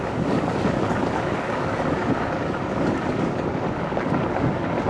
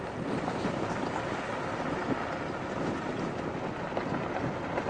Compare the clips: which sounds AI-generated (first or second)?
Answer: first